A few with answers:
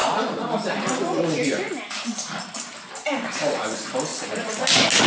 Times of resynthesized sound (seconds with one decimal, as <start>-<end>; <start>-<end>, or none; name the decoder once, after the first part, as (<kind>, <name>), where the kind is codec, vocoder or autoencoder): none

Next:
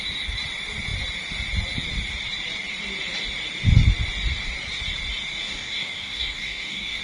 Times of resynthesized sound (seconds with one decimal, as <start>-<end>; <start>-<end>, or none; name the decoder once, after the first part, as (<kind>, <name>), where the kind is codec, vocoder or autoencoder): 5.3-7.0 (codec, DAC)

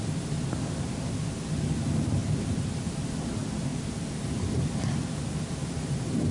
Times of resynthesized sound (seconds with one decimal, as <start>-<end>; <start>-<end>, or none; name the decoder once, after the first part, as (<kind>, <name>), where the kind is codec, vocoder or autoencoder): 2.2-2.7 (vocoder, BigVGAN v2); 3.4-5.0

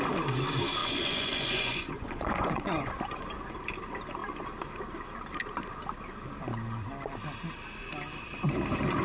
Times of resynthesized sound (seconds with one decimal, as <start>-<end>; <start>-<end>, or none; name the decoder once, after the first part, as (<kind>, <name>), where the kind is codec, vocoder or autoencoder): 0.8-3.0 (vocoder, Vocos)

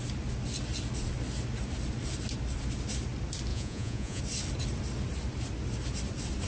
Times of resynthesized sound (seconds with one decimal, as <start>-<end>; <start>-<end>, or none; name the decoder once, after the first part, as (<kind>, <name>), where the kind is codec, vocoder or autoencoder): 3.5-4.2 (vocoder, Vocos)

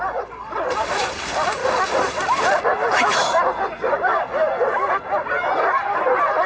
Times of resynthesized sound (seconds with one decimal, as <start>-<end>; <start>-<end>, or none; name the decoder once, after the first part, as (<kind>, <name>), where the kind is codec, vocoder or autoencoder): none